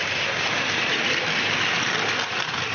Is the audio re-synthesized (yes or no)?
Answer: no